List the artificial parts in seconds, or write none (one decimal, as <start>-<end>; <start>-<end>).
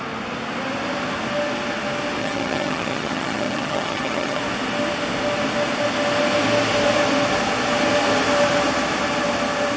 2.2-4.4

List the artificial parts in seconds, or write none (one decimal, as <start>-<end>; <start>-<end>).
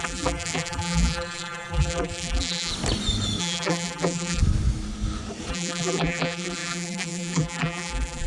0.0-2.7; 3.4-4.4; 5.5-8.3